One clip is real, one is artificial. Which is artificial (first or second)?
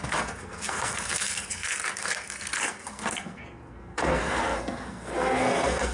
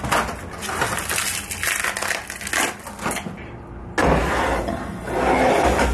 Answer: first